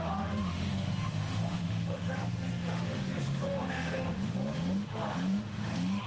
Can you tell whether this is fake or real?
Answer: fake